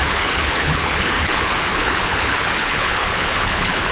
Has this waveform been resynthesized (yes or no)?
yes